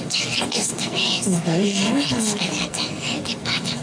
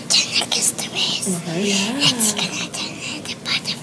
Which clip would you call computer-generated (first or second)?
first